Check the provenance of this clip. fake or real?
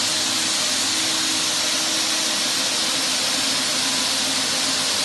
real